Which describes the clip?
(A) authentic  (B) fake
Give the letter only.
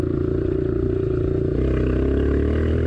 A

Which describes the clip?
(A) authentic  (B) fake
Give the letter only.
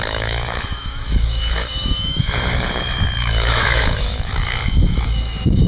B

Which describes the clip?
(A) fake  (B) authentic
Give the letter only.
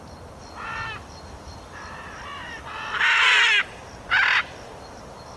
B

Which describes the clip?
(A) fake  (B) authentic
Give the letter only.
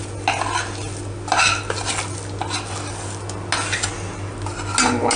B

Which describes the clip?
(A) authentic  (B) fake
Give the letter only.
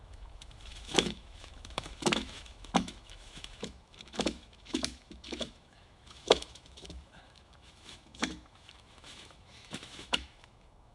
B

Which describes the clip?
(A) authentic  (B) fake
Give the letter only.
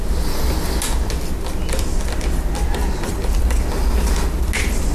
A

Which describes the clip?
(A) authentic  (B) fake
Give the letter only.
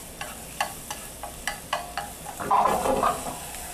A